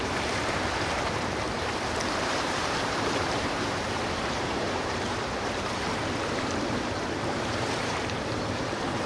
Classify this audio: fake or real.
fake